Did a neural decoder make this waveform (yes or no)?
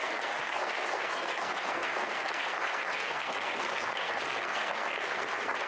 yes